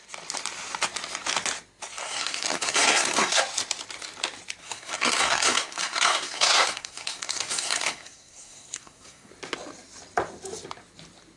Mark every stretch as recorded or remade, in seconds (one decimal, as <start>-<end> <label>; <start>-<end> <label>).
0.0-2.0 recorded; 2.0-3.4 remade; 3.4-4.6 recorded; 4.6-9.3 remade; 9.3-11.4 recorded